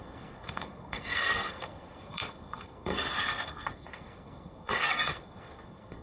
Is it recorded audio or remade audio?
remade